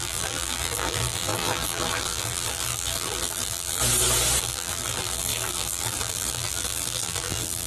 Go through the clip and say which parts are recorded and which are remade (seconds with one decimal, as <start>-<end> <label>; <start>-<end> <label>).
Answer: 0.0-3.8 remade; 3.8-4.4 recorded; 4.4-7.7 remade